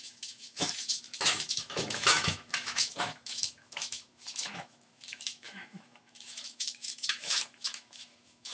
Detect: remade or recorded remade